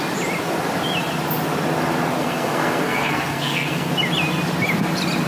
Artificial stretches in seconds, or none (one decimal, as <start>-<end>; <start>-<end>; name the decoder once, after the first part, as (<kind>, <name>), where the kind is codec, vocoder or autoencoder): 2.2-3.9 (codec, SNAC)